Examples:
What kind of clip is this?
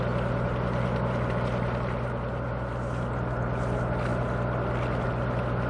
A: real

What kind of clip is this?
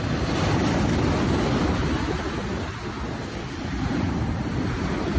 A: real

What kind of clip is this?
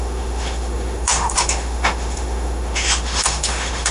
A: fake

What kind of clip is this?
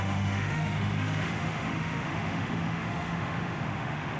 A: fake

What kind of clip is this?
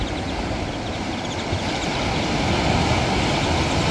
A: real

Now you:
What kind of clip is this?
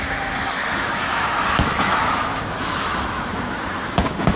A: fake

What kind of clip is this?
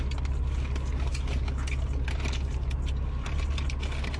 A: real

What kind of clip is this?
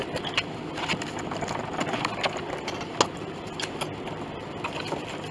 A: real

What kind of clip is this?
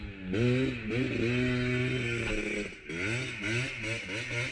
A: real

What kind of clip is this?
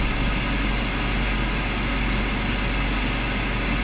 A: real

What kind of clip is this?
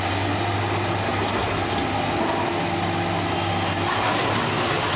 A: real